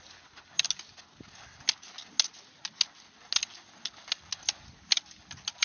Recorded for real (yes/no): yes